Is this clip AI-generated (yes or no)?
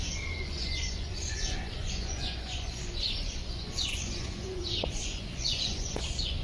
yes